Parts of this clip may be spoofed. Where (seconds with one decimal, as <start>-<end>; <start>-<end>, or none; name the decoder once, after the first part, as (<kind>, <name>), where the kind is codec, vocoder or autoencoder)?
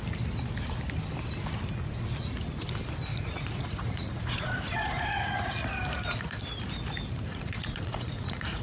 3.1-5.6 (vocoder, Vocos); 7.3-8.6